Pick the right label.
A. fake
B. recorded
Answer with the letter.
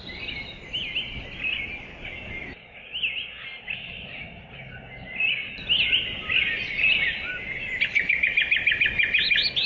B